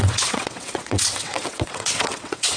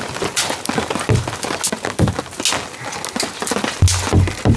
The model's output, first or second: first